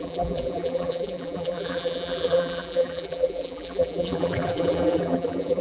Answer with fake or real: fake